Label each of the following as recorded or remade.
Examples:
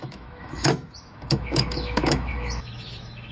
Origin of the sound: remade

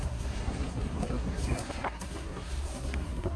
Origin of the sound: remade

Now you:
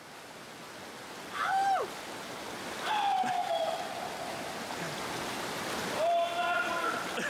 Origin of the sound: recorded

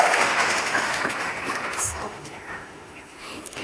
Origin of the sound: remade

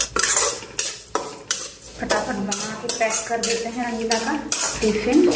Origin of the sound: recorded